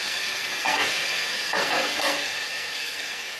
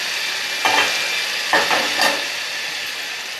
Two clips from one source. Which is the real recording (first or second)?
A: second